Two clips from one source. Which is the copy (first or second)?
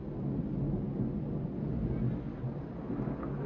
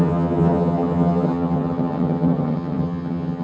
second